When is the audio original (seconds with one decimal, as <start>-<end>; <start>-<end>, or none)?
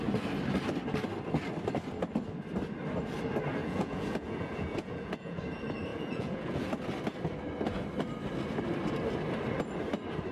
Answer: 0.0-3.6; 5.4-5.9; 6.6-10.3